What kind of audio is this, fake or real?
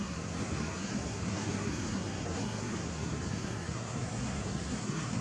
fake